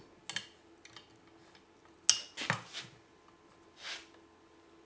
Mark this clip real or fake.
real